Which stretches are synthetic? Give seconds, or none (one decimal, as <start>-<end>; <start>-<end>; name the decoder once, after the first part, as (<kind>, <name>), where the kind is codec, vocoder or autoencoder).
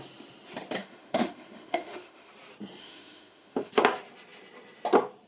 0.8-2.3 (autoencoder, DAC-VAE); 2.8-3.7